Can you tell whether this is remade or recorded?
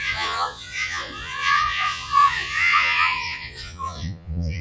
remade